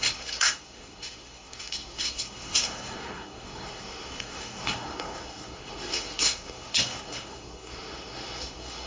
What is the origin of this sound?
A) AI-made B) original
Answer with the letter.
A